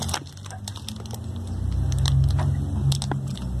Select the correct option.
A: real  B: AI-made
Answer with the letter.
A